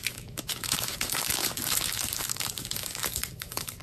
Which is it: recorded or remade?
remade